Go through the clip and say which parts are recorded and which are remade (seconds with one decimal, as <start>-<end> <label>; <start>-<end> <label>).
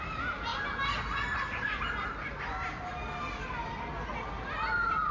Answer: 0.0-5.1 recorded